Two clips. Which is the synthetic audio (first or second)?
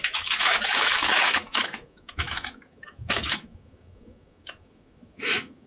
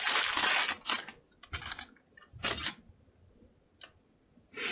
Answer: first